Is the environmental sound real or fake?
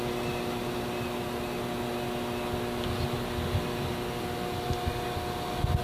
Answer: real